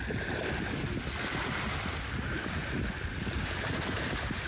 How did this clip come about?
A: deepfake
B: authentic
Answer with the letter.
B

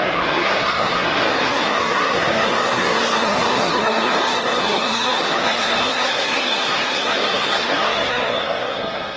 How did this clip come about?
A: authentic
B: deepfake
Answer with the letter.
B